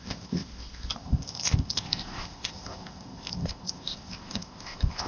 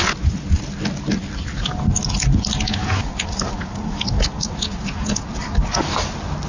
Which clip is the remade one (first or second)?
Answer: first